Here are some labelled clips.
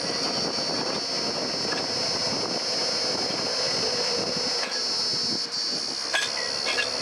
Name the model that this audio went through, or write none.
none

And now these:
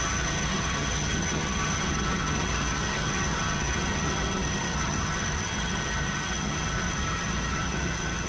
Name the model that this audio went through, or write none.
vocoder, HiFi-GAN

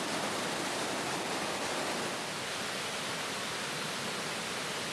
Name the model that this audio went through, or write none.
none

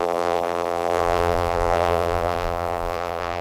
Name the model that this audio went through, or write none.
vocoder, BigVGAN v2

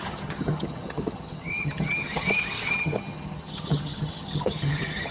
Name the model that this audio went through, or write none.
vocoder, HiFi-GAN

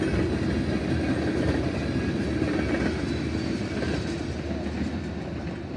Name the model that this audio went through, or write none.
none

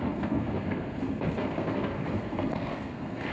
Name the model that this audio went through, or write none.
codec, SNAC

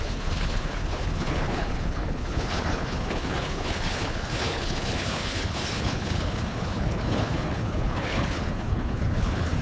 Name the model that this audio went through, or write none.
codec, HILCodec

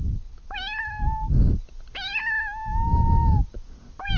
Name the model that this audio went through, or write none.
none